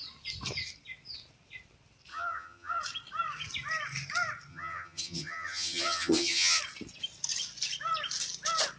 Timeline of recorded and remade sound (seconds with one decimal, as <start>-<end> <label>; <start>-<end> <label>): 0.0-2.1 recorded; 2.1-2.8 remade; 2.8-4.5 recorded; 4.5-6.6 remade; 6.6-8.8 recorded